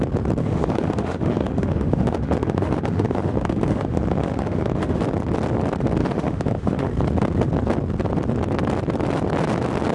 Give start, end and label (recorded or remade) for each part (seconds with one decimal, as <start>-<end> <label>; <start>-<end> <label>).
0.0-0.4 recorded; 0.4-5.0 remade; 5.0-6.0 recorded; 6.0-6.9 remade; 6.9-9.9 recorded